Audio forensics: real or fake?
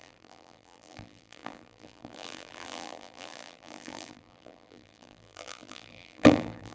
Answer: fake